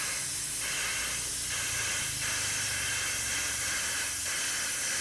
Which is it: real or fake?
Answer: real